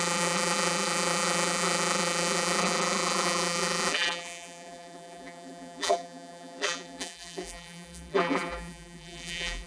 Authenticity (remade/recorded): remade